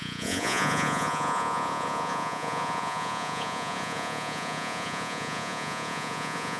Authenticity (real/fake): fake